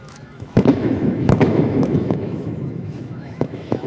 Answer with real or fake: fake